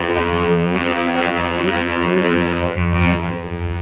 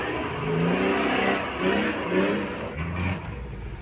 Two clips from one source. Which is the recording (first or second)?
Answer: second